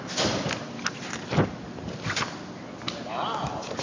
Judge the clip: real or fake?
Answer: real